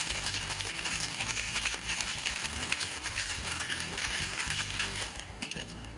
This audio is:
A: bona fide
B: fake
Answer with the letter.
B